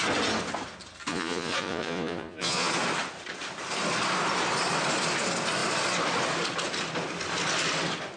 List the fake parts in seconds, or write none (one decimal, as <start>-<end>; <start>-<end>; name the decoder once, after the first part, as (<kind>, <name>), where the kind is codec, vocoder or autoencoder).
1.1-2.7 (vocoder, Vocos)